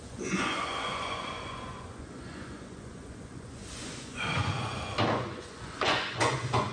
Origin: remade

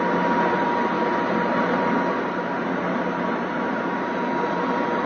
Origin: recorded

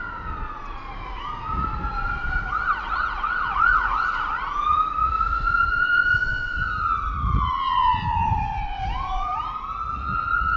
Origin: remade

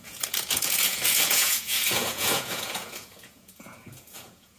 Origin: remade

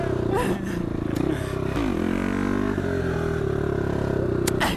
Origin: recorded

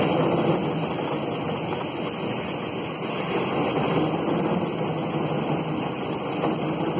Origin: recorded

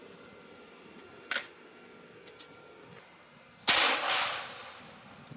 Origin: recorded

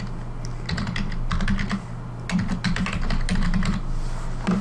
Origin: recorded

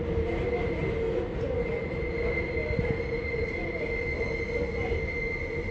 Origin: recorded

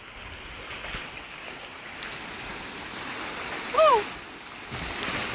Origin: recorded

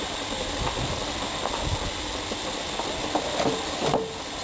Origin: recorded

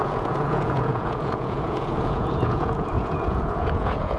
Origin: remade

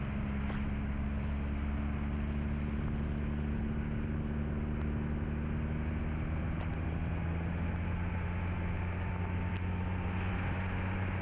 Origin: recorded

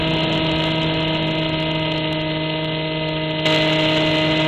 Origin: recorded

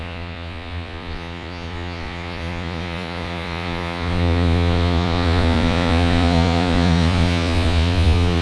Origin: remade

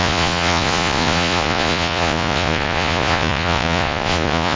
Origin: remade